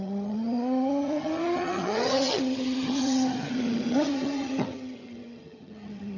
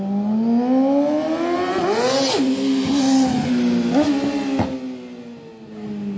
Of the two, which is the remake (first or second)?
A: first